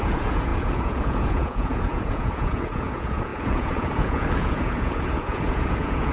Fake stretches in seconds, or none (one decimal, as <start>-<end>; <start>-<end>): 0.0-6.1